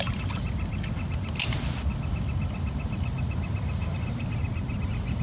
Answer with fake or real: real